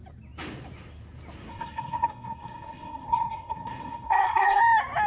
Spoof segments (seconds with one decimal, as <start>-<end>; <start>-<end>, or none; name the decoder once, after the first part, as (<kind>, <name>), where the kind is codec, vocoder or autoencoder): 1.5-4.6 (codec, SNAC)